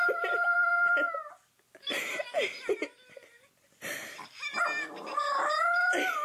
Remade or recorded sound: recorded